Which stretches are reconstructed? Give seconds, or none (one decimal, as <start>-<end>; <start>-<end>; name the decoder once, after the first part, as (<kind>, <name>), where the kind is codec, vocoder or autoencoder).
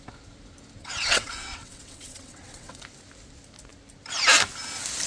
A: 0.8-2.8 (vocoder, WaveNeXt)